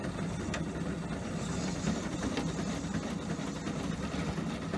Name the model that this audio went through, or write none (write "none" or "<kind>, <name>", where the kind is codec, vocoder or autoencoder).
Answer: none